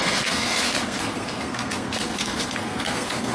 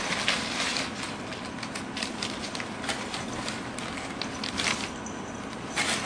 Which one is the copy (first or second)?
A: first